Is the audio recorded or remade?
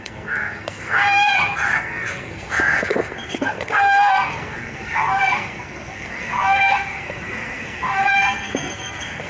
remade